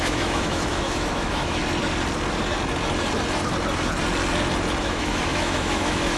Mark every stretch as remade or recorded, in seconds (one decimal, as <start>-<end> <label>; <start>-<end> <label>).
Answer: 0.0-1.6 remade; 1.6-4.8 recorded; 4.8-6.2 remade